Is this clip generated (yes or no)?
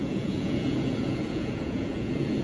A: yes